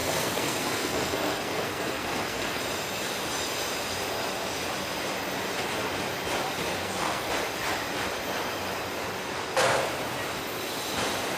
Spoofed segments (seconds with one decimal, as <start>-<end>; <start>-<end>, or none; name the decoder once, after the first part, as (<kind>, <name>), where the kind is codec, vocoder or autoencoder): 0.0-2.6 (codec, SNAC); 6.8-7.3